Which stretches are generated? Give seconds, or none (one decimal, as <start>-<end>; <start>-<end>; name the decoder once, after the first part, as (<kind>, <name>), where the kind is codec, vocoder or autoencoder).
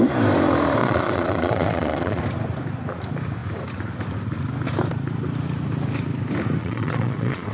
0.8-2.2 (vocoder, Vocos); 6.6-7.5